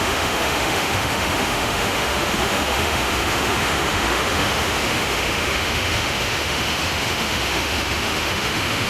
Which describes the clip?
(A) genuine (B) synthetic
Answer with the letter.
B